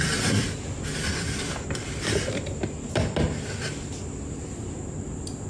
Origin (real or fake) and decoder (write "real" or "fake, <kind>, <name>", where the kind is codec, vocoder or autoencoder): real